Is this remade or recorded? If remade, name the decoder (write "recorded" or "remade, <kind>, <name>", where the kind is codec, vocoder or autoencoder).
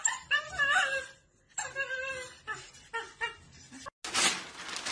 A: recorded